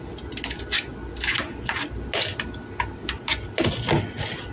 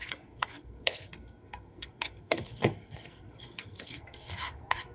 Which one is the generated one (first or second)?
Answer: second